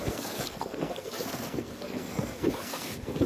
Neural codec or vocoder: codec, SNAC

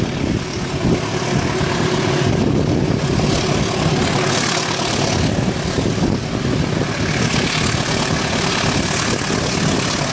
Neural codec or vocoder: none